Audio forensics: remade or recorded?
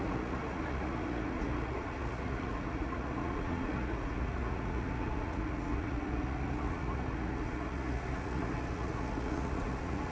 remade